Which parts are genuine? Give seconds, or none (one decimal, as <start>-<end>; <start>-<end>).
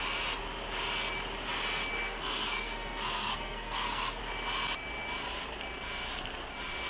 0.0-1.9; 4.2-6.9